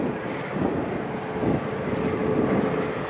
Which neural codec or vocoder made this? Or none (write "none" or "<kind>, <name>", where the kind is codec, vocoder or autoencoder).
none